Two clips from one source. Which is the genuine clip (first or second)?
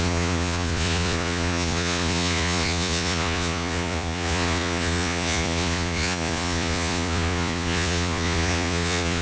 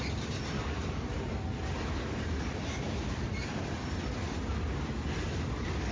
second